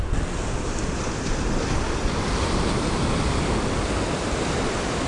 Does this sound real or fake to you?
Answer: real